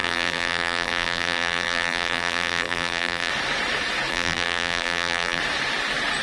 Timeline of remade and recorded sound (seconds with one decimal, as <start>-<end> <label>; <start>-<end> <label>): 0.0-3.3 remade; 3.3-4.1 recorded; 4.1-5.4 remade; 5.4-6.2 recorded